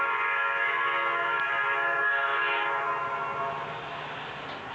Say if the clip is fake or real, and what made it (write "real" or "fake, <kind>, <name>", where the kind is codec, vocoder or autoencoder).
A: real